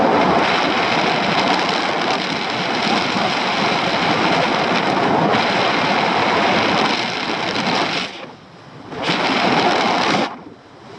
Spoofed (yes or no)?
no